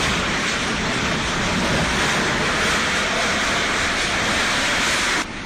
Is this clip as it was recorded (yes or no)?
yes